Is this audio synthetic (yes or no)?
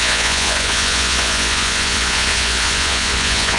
yes